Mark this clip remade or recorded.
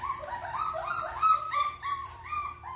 remade